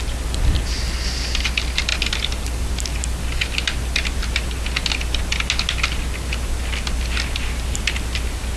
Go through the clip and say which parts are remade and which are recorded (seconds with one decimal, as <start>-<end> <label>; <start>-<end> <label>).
0.0-8.6 recorded